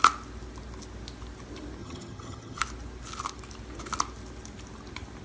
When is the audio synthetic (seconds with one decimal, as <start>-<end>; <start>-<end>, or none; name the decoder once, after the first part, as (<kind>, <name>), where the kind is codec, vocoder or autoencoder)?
1.8-2.6 (vocoder, HiFi-GAN)